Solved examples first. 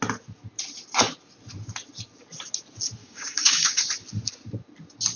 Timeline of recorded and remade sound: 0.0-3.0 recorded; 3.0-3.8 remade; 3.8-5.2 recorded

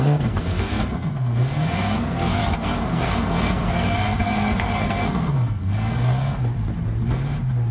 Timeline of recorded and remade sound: 0.0-6.4 remade; 6.4-7.7 recorded

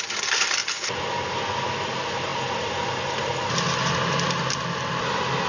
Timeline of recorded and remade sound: 0.0-5.5 recorded

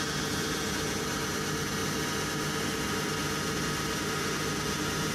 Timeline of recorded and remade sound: 0.0-5.1 recorded

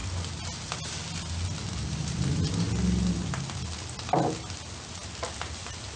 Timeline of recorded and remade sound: 0.0-6.0 recorded

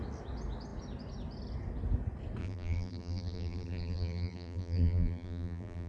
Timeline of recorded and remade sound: 0.0-2.4 recorded; 2.4-5.9 remade

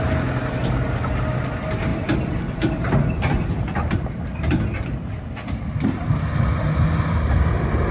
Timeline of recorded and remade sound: 0.0-1.9 recorded; 1.9-6.6 remade; 6.6-7.9 recorded